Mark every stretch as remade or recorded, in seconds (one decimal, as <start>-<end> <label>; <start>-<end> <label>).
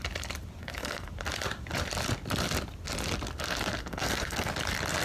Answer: 0.0-0.6 recorded; 0.6-1.1 remade; 1.1-3.8 recorded; 3.8-4.5 remade; 4.5-5.0 recorded